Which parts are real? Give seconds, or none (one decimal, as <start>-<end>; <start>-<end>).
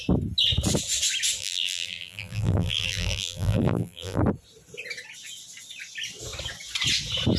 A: 0.0-1.4; 4.2-7.4